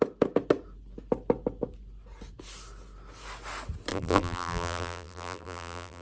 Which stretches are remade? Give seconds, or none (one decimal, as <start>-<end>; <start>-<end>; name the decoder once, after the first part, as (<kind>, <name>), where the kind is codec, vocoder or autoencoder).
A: 3.9-6.0 (vocoder, BigVGAN v2)